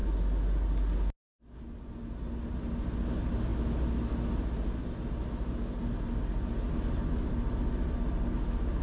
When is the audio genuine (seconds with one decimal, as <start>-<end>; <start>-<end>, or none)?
0.0-8.8